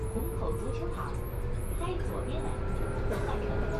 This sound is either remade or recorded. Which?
recorded